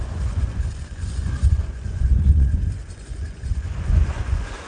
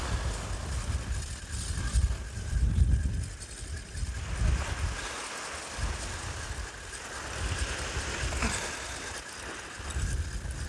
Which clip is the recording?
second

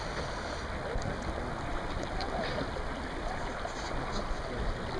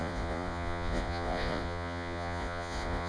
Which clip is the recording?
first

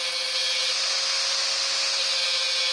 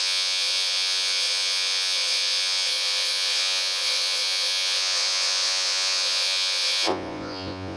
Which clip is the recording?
first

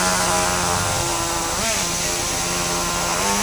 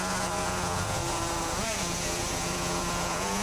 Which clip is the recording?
first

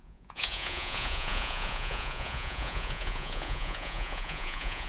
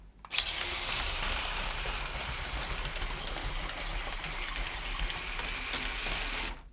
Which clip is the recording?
second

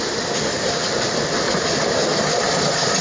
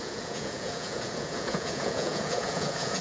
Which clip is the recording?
first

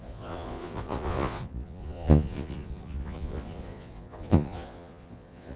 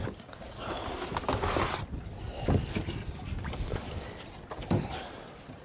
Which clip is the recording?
second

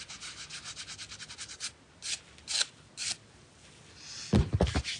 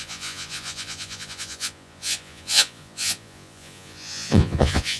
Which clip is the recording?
first